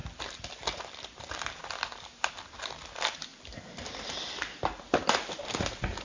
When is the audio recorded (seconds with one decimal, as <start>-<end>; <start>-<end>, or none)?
1.6-3.3; 4.2-6.0